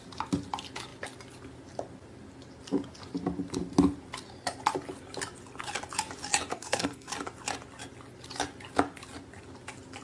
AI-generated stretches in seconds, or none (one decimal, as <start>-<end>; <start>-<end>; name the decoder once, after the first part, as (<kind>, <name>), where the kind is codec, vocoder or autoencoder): 6.5-7.1 (codec, SNAC)